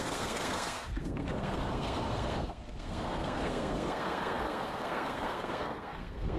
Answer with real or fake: fake